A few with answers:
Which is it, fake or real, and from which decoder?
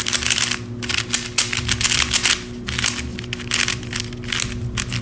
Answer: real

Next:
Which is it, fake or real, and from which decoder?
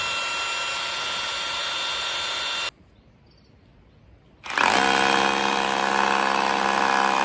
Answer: real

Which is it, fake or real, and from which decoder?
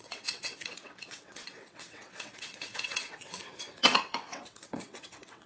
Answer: fake, vocoder, WaveNeXt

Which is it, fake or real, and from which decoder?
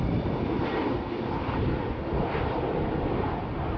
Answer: real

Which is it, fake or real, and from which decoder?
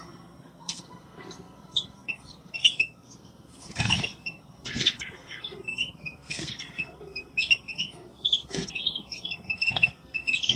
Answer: fake, codec, SNAC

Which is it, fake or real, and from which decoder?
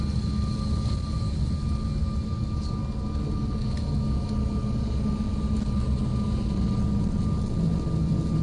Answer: real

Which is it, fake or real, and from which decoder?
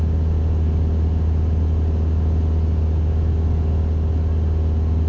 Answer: real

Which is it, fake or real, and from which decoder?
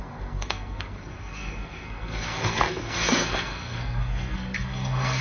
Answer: fake, codec, SNAC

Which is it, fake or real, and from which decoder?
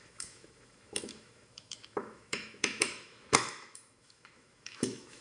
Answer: fake, autoencoder, DAC-VAE